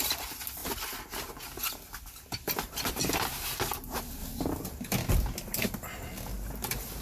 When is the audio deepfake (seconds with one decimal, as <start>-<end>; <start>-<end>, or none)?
none